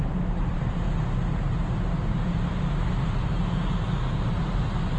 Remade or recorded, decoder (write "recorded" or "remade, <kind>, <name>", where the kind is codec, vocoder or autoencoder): remade, vocoder, BigVGAN v2